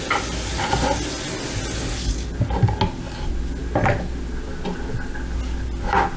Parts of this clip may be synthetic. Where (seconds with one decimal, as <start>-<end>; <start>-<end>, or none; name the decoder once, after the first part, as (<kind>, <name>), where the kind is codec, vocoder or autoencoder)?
none